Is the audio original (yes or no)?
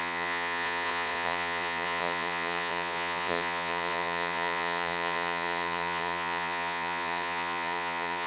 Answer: no